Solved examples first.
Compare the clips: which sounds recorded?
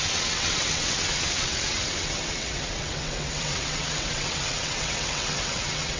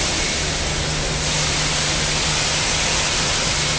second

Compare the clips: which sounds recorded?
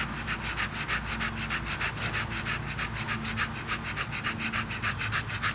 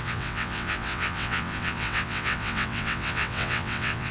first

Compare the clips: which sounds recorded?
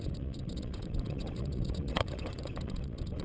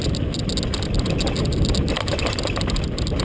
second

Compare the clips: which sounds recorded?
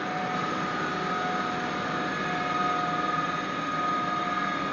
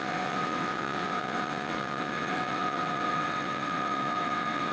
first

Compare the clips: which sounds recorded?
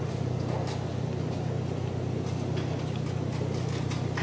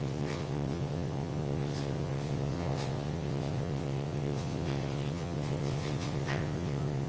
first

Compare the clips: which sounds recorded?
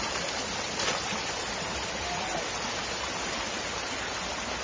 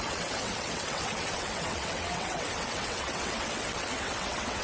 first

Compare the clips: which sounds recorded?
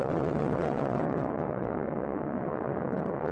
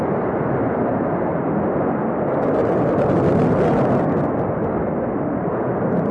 second